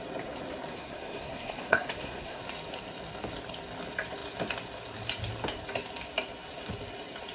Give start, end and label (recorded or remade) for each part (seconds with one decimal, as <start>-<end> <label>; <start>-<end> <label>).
0.0-0.7 recorded; 0.7-2.4 remade; 2.4-7.3 recorded